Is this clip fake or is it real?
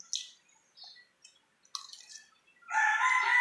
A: real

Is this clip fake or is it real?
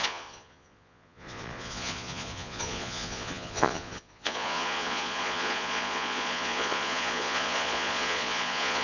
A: fake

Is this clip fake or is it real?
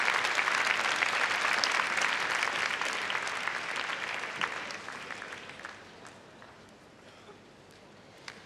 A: real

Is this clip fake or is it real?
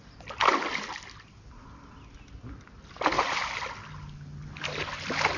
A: real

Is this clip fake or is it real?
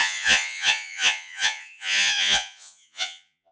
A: fake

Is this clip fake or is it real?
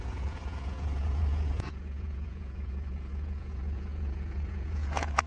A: fake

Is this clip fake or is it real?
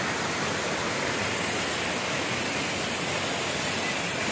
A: real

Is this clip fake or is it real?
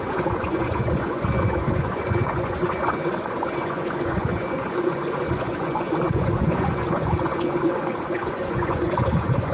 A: fake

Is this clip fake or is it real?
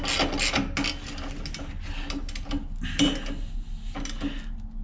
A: real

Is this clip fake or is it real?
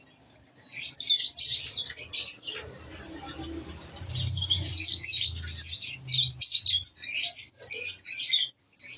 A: real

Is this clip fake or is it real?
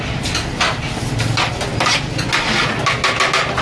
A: real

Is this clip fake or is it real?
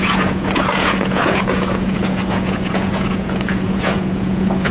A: fake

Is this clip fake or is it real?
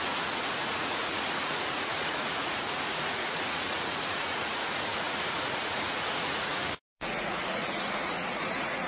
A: fake